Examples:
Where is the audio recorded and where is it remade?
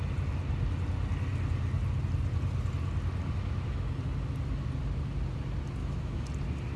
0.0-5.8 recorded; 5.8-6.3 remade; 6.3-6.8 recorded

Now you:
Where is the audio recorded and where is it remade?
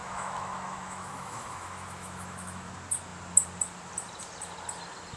0.0-2.7 remade; 2.7-5.2 recorded